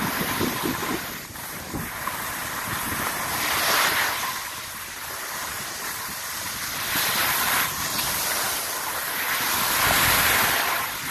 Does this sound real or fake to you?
real